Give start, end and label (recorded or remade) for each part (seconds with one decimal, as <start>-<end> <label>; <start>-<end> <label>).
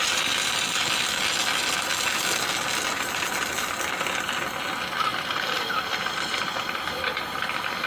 0.0-7.9 recorded